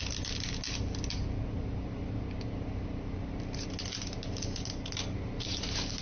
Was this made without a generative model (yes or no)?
yes